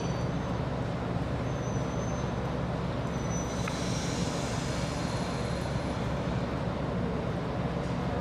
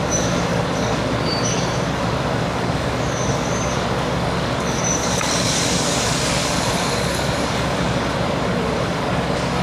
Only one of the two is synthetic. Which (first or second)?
second